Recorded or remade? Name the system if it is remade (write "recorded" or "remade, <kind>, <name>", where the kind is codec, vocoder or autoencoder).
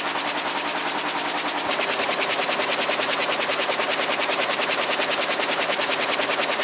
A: recorded